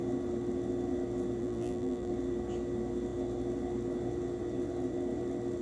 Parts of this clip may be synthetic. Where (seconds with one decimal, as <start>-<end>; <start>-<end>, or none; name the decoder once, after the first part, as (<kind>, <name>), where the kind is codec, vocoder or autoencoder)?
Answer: 1.4-2.1 (vocoder, BigVGAN v2)